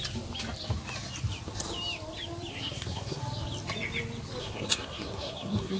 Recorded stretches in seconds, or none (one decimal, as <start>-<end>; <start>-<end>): 0.0-2.5; 3.2-4.4